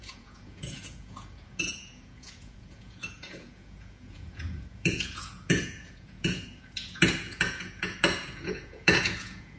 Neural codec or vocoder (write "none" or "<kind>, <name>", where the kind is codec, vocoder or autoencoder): vocoder, Vocos